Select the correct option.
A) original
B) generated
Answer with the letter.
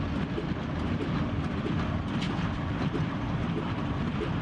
A